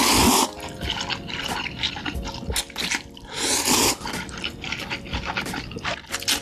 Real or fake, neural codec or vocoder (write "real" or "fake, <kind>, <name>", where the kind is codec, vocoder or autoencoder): fake, vocoder, BigVGAN v2